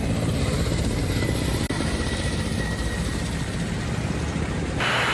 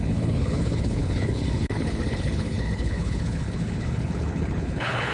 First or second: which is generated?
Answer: second